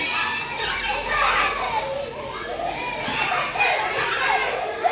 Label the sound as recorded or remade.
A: recorded